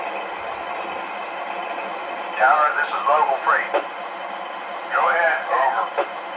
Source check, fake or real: fake